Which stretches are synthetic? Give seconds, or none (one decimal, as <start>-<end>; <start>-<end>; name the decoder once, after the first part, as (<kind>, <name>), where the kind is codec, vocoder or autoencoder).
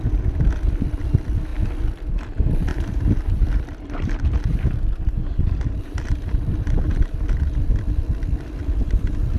2.7-7.8 (vocoder, BigVGAN v2)